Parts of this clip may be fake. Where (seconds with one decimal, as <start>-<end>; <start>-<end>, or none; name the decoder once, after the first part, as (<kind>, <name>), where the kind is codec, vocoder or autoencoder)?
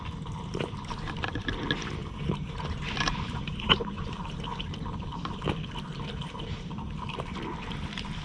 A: 2.0-6.7 (vocoder, BigVGAN v2)